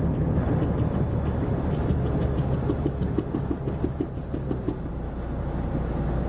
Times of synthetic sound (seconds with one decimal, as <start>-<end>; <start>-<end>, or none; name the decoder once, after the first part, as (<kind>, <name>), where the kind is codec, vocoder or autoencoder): 1.3-5.1 (vocoder, BigVGAN v2)